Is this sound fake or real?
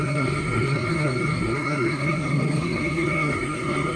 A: fake